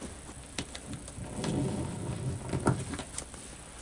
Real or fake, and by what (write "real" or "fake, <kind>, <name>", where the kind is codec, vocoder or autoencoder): real